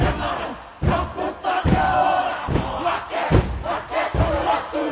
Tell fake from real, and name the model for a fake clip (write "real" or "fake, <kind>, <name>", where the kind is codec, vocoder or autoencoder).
real